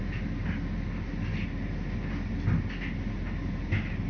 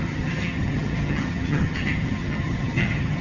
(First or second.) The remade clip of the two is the second